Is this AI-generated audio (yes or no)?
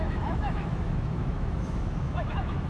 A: yes